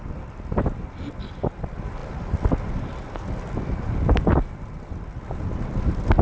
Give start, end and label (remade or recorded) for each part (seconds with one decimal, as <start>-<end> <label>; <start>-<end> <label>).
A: 0.0-6.2 recorded